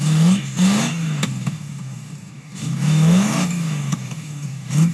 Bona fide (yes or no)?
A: no